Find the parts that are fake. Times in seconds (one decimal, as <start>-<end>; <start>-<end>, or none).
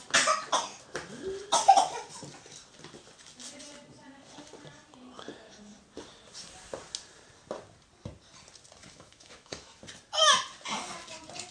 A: 8.8-9.8